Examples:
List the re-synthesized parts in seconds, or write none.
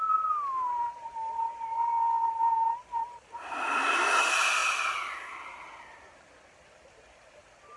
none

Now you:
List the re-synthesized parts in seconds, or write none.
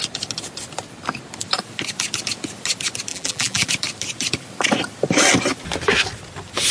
3.1-3.7 (vocoder, BigVGAN v2)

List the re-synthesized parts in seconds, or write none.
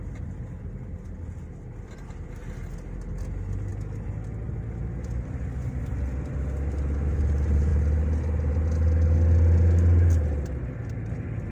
none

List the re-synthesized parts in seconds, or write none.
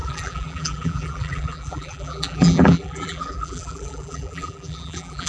0.0-5.3 (vocoder, BigVGAN v2)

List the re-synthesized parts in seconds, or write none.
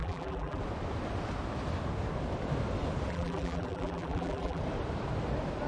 0.0-0.6 (vocoder, BigVGAN v2); 3.1-4.6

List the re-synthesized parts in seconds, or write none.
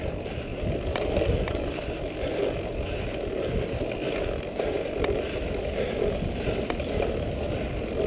0.5-1.8 (vocoder, BigVGAN v2)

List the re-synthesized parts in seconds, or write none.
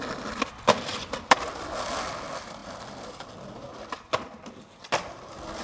0.9-1.5 (vocoder, BigVGAN v2); 2.6-3.3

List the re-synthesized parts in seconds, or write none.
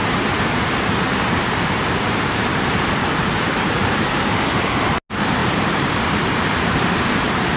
0.0-3.0 (vocoder, BigVGAN v2); 5.4-7.6